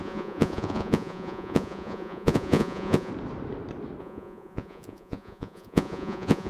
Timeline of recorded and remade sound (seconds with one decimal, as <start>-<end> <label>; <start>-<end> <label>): 0.0-3.1 remade; 3.1-4.0 recorded; 4.0-6.5 remade